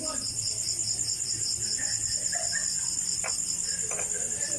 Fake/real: fake